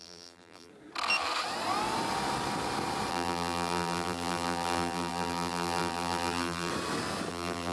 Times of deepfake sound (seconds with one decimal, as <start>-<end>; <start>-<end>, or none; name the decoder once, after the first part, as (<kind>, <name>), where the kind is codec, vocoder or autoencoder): 0.0-0.7 (vocoder, BigVGAN v2); 3.1-6.7; 7.3-7.7

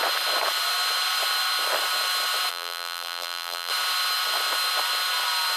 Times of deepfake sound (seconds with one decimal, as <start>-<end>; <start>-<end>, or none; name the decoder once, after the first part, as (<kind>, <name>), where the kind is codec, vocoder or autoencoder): 2.5-3.7 (vocoder, BigVGAN v2)

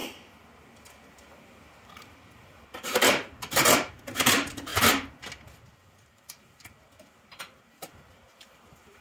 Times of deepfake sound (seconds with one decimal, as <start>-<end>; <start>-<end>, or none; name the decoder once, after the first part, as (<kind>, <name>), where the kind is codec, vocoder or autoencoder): 1.1-4.7 (vocoder, BigVGAN v2); 6.0-9.0

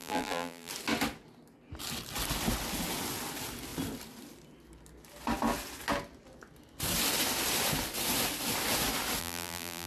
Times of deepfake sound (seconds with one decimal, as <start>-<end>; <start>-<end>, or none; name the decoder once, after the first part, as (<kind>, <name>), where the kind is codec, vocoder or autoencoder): 0.0-0.7 (vocoder, BigVGAN v2); 9.2-9.9